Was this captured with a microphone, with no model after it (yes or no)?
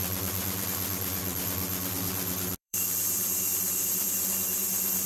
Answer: no